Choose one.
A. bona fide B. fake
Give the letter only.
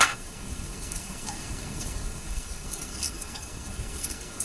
B